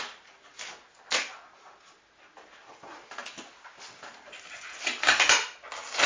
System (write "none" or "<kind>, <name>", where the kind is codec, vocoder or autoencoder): none